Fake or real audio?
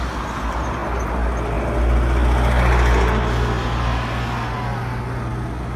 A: real